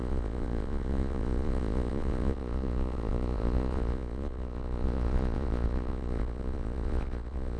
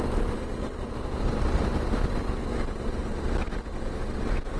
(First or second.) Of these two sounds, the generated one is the first